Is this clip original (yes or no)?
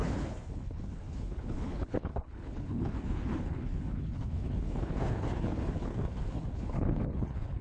no